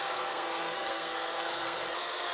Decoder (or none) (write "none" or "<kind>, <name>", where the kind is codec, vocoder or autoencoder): codec, SNAC